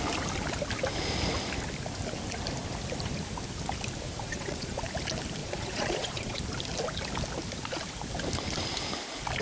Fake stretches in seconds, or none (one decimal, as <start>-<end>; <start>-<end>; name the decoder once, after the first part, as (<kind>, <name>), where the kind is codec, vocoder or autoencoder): 4.2-4.8 (vocoder, Vocos); 5.4-6.4